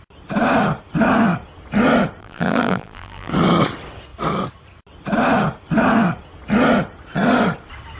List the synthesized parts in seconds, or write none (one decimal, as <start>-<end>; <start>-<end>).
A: 2.2-3.3